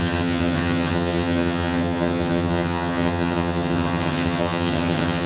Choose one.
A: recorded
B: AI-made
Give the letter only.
B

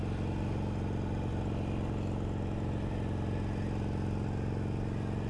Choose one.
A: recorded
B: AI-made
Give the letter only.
A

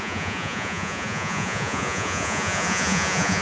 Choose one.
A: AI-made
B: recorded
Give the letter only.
A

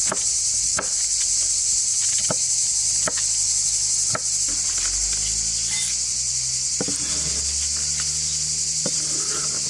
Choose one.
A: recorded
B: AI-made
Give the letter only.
A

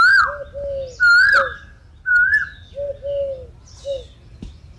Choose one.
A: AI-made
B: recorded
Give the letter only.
B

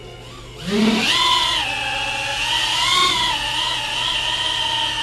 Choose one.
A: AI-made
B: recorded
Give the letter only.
B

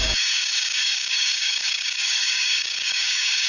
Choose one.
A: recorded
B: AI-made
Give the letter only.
B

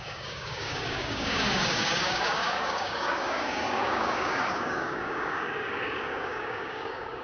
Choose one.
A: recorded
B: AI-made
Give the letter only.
B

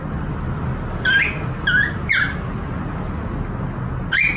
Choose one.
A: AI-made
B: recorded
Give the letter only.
B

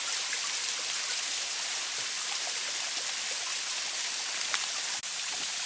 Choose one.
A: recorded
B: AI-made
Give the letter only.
A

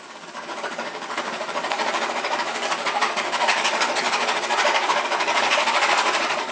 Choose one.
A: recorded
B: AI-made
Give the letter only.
B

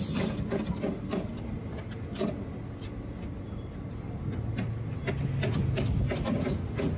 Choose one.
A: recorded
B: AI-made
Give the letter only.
A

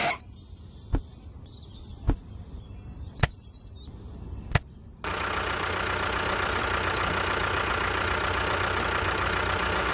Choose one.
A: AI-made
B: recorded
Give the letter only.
B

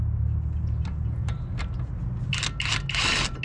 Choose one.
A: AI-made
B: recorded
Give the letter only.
B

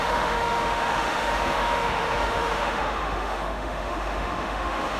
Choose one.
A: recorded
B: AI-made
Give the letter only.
B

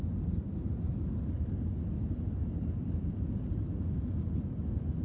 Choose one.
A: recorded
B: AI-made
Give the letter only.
A